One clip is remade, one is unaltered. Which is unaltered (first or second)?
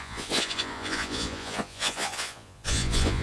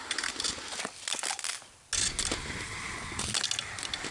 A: second